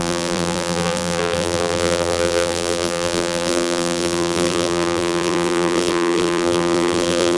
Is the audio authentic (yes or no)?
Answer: no